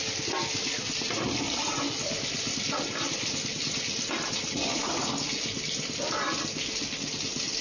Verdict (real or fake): real